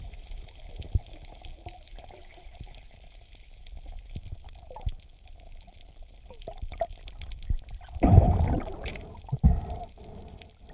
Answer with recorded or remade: remade